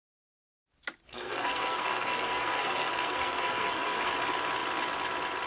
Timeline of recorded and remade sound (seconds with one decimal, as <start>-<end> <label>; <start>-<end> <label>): 0.0-1.1 recorded; 1.1-4.1 remade; 4.1-5.5 recorded